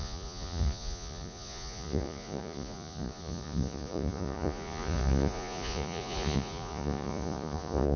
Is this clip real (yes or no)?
no